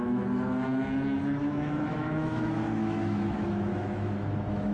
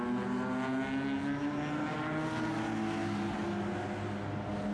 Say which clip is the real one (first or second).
second